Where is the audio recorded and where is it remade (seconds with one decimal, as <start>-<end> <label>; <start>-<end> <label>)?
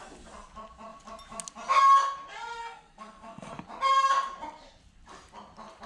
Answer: 0.0-2.6 recorded; 2.6-3.5 remade; 3.5-5.9 recorded